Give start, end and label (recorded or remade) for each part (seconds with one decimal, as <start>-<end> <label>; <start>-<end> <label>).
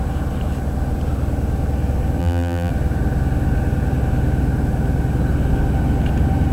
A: 0.0-2.2 recorded; 2.2-2.7 remade; 2.7-6.5 recorded